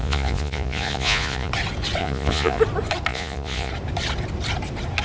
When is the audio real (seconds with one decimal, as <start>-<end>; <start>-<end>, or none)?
1.5-2.0; 2.6-3.1; 3.7-5.0